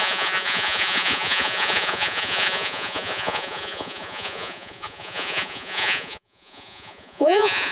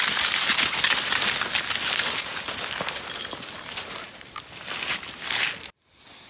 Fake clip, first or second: first